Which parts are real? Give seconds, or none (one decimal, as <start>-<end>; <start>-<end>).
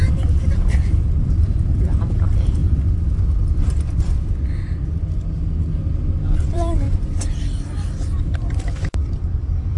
2.6-6.4